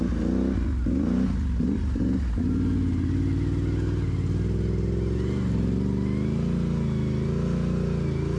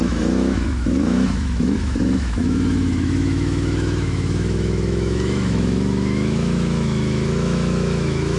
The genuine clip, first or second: first